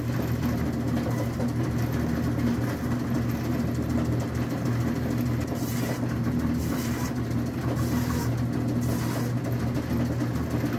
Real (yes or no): yes